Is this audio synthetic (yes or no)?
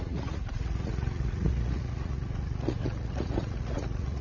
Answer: yes